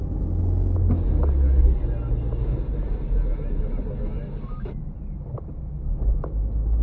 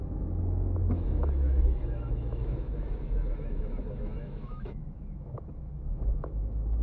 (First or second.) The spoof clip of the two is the second